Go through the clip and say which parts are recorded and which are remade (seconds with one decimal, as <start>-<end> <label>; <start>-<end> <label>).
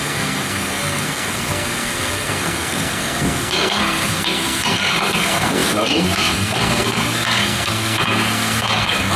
0.0-9.2 remade